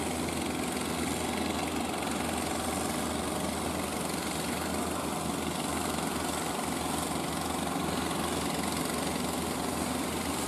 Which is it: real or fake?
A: real